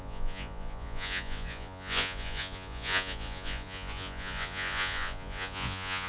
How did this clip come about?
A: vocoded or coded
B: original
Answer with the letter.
A